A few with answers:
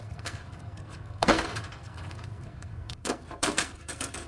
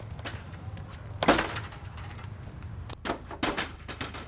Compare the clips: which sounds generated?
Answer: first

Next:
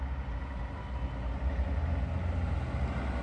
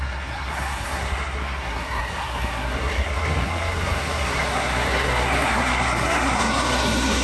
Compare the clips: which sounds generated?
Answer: second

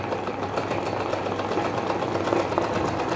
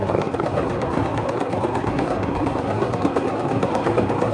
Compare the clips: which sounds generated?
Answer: second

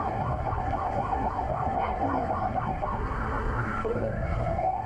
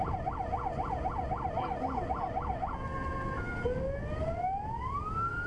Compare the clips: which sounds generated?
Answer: first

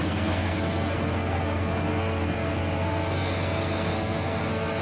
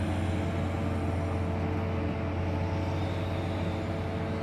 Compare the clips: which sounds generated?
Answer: first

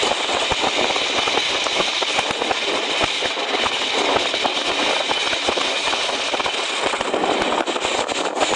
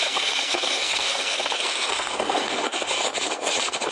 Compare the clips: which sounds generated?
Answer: second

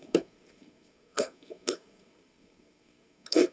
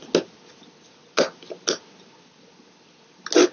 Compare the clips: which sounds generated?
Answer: first